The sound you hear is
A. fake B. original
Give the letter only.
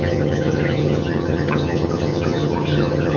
A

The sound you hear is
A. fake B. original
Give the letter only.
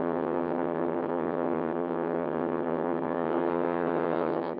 A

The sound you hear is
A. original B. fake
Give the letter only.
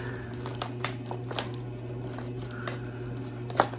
A